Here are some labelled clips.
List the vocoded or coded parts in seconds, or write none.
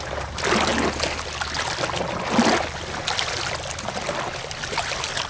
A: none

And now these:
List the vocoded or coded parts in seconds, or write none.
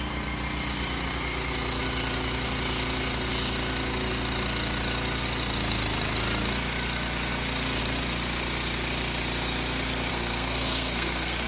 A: 10.1-11.5